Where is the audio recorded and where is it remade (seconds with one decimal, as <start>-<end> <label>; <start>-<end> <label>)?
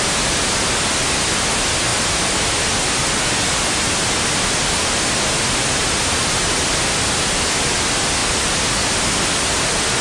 0.0-10.0 recorded